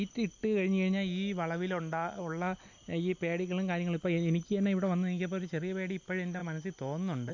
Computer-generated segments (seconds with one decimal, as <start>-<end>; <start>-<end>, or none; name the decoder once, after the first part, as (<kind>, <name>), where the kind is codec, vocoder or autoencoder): none